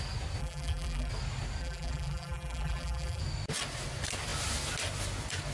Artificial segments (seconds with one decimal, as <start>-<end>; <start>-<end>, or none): 0.4-1.1; 1.6-3.2

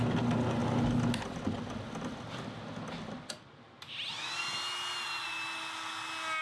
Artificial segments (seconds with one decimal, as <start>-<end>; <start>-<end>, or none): none

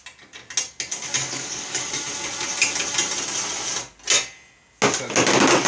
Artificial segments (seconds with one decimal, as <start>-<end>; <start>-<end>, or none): 1.2-1.9

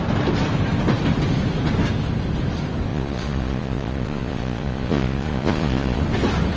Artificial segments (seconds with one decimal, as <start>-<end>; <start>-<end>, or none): 2.9-6.0

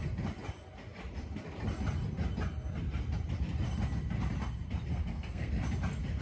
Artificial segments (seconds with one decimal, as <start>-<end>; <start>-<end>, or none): 4.9-5.5

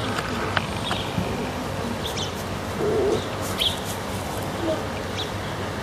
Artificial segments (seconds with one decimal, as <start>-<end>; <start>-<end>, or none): none